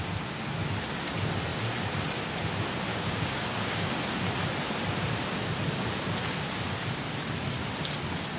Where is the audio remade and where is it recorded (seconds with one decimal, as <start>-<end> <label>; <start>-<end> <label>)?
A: 0.0-2.9 recorded; 2.9-3.9 remade; 3.9-8.4 recorded